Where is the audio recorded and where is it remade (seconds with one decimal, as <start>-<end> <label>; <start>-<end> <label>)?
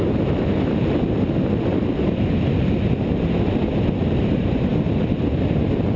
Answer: 0.0-6.0 recorded